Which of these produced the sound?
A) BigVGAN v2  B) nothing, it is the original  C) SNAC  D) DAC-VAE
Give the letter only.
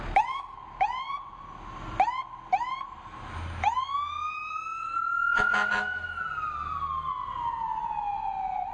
B